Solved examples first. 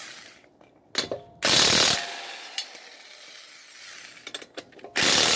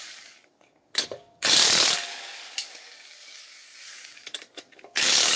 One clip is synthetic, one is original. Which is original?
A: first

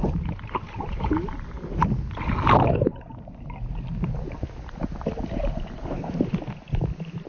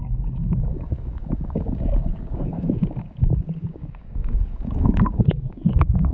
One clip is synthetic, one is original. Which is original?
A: first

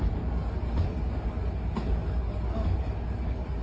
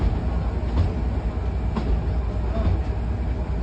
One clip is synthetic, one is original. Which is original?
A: second